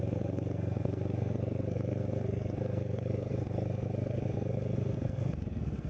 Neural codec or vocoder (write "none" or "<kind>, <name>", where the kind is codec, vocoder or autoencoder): codec, SNAC